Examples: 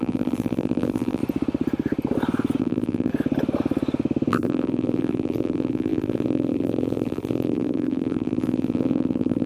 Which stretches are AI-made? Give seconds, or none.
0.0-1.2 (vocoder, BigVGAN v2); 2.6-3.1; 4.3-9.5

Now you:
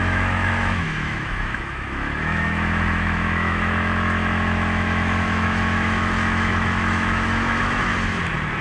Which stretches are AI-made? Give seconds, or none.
0.0-7.9 (autoencoder, DAC-VAE)

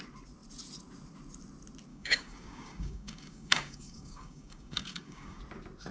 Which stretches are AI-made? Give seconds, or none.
1.9-5.4 (codec, DAC)

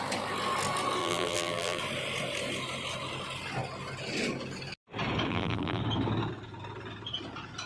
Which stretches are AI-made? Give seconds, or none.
1.0-1.8 (vocoder, BigVGAN v2); 5.3-5.8

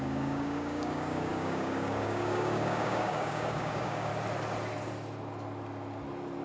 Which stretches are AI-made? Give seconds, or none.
0.0-4.1 (codec, DAC)

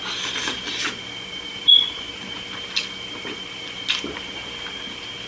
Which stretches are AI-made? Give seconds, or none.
none